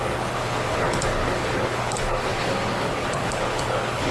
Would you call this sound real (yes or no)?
no